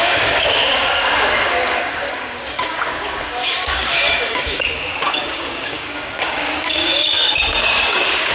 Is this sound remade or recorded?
remade